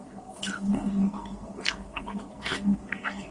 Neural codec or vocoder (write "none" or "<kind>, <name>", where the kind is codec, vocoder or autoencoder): codec, SNAC